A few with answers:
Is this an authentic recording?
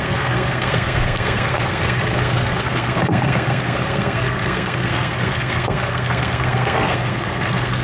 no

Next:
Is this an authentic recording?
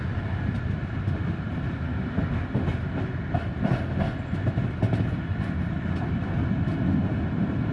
yes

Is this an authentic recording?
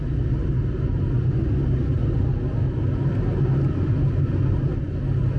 yes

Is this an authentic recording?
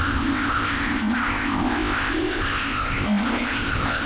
no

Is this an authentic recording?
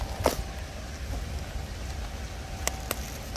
yes